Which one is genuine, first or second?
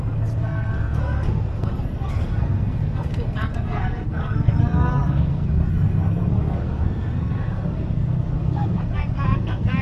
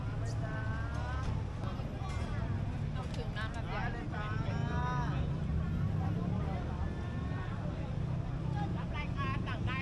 second